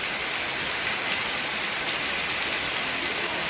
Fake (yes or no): no